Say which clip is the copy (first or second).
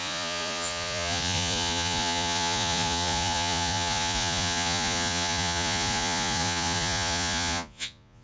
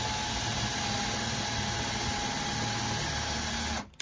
first